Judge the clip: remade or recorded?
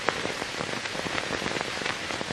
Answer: remade